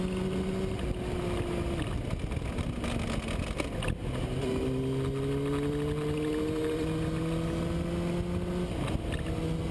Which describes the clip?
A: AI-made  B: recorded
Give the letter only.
B